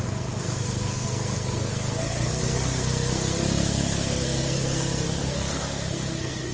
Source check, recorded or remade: remade